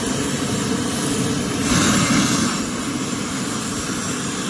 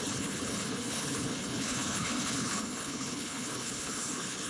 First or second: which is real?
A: first